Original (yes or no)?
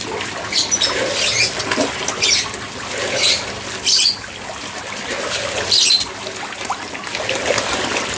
yes